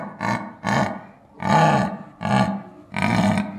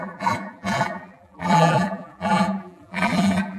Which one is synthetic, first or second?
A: second